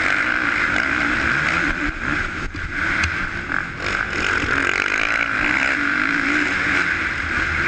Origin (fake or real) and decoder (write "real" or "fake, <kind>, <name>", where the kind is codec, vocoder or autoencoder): real